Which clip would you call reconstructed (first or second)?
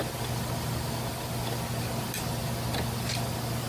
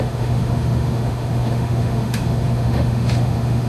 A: second